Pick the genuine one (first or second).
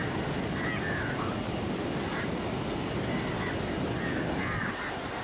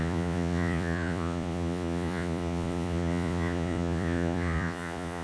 first